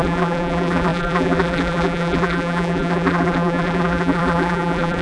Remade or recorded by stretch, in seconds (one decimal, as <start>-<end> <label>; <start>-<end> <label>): 0.0-5.0 remade